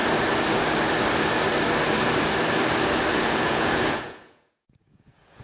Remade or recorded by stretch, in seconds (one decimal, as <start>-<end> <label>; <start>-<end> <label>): 0.0-3.2 recorded; 3.2-5.4 remade